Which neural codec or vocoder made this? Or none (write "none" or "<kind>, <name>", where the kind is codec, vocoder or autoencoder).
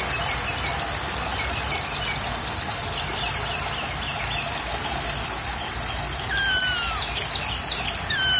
none